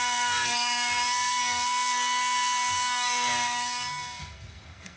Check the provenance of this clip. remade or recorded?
remade